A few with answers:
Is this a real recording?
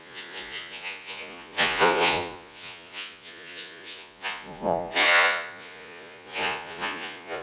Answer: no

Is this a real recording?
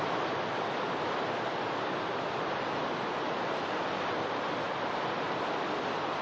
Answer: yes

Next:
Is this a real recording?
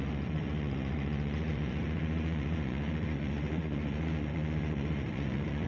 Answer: no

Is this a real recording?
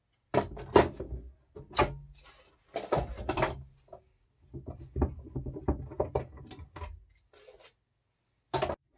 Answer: yes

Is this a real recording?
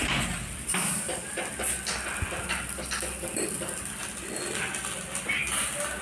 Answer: yes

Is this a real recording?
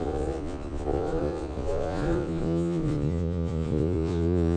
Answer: no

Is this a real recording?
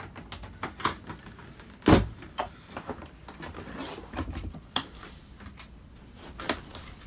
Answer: yes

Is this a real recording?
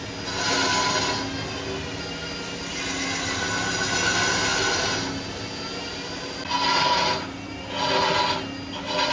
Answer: yes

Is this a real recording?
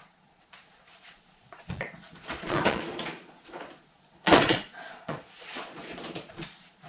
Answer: no